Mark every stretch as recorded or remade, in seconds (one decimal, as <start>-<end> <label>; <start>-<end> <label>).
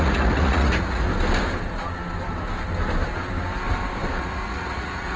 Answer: 0.0-1.1 remade; 1.1-4.2 recorded; 4.2-5.2 remade